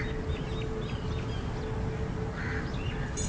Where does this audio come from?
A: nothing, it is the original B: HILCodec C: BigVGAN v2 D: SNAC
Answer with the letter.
A